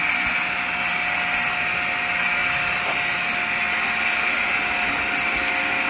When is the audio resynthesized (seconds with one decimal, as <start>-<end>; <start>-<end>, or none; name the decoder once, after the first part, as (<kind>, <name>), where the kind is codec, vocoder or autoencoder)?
none